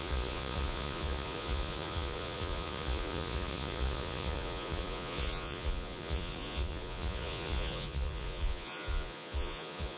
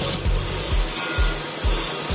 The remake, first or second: first